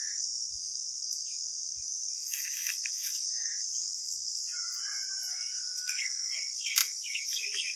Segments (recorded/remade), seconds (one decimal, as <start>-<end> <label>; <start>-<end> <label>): 0.0-4.4 remade; 4.4-5.3 recorded; 5.3-7.8 remade